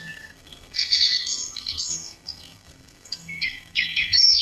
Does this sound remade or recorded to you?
remade